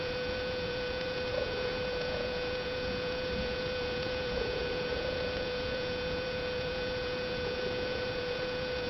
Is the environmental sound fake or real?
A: fake